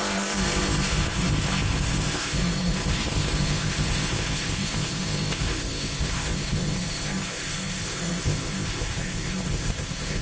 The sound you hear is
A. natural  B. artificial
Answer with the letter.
B